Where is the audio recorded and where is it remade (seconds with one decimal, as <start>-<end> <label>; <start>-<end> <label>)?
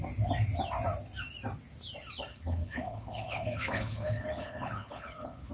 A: 0.0-2.3 recorded; 2.3-5.5 remade